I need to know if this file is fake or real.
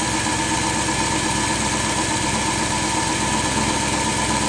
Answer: real